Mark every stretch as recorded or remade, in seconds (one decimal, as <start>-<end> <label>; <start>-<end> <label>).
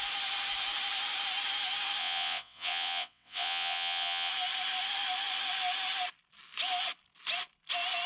0.0-2.0 recorded; 2.0-4.3 remade; 4.3-8.1 recorded